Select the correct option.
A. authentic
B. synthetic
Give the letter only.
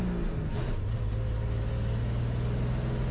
A